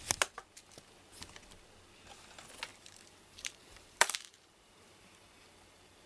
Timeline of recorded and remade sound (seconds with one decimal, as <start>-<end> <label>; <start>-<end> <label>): 0.0-2.7 recorded; 2.7-6.1 remade